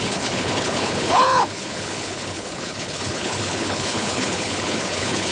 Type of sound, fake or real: fake